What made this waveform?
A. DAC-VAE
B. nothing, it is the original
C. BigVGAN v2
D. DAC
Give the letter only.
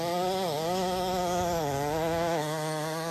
D